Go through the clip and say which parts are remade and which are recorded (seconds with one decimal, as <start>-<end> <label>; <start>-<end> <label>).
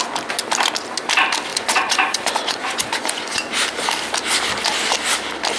0.0-1.5 recorded; 1.5-3.5 remade; 3.5-5.6 recorded